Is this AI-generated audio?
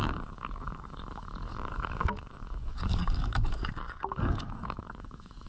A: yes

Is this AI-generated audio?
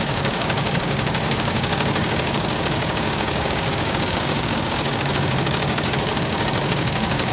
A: yes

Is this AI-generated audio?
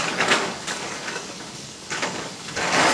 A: yes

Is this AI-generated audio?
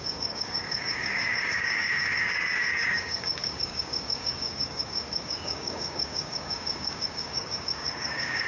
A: yes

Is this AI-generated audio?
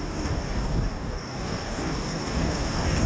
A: yes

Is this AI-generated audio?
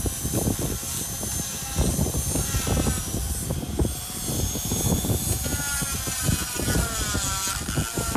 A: no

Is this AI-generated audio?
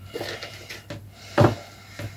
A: no